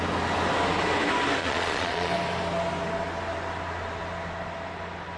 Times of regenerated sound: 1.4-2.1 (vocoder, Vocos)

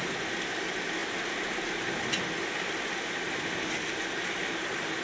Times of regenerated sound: none

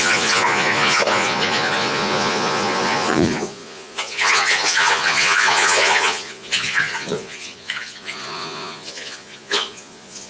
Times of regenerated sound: 0.0-10.3 (vocoder, Vocos)

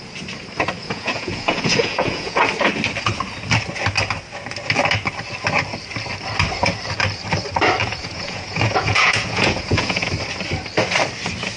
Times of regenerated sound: 0.8-2.4 (vocoder, Vocos); 7.8-10.1

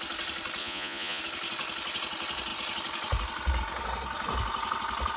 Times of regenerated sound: 0.6-1.2 (vocoder, Vocos)